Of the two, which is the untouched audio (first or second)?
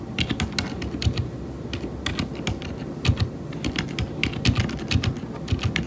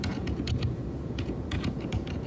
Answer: first